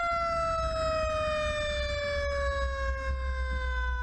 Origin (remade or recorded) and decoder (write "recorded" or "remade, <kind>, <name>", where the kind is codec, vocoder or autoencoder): recorded